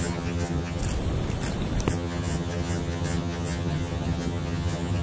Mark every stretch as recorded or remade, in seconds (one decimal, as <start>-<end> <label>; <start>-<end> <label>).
0.0-0.8 remade; 0.8-1.9 recorded; 1.9-5.0 remade